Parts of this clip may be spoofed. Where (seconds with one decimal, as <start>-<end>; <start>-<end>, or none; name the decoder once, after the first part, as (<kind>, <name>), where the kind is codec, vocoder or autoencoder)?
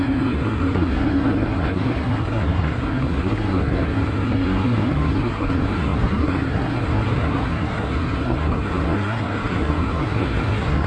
0.0-10.9 (codec, SNAC)